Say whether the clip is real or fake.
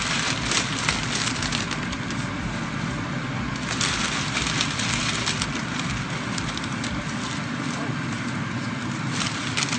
real